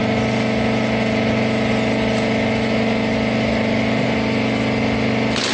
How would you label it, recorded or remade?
recorded